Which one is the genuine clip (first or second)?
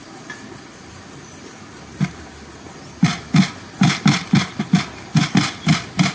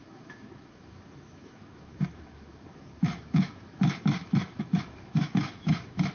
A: first